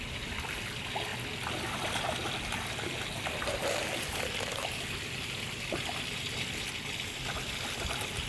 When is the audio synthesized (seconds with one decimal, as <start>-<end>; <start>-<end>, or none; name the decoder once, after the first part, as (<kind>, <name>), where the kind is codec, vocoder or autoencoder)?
none